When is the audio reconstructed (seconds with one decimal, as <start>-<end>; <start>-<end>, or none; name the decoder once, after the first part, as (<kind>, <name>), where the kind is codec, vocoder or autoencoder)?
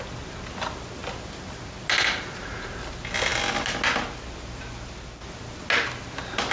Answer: none